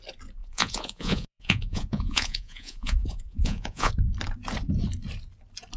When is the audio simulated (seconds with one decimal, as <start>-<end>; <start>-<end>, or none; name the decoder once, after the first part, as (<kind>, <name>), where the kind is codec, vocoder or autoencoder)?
0.4-3.9 (vocoder, Vocos)